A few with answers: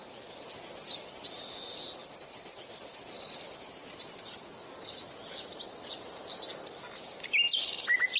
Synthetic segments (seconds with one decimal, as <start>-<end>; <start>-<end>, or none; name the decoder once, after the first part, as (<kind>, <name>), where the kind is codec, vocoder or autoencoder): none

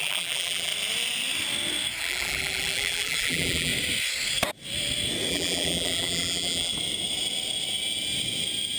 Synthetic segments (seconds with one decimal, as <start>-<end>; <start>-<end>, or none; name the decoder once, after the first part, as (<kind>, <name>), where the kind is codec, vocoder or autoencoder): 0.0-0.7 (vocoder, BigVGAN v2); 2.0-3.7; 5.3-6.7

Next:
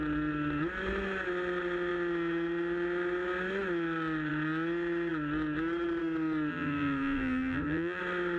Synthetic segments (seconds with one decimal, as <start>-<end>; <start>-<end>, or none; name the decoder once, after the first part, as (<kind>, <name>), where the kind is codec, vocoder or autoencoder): 6.5-8.0 (vocoder, BigVGAN v2)

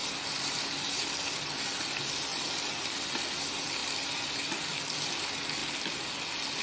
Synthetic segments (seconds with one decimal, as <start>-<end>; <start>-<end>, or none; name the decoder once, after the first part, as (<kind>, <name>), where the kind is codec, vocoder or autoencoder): 0.0-1.0 (vocoder, BigVGAN v2); 2.3-3.4; 3.8-4.7